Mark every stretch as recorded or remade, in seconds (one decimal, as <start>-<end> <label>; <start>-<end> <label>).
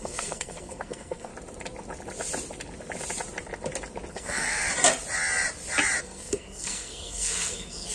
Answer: 0.0-1.3 remade; 1.3-4.1 recorded; 4.1-4.6 remade; 4.6-6.0 recorded; 6.0-7.9 remade